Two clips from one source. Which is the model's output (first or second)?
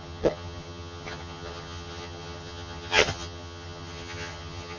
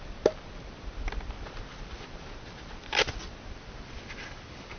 first